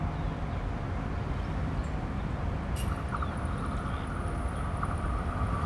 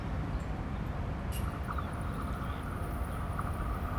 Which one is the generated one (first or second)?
second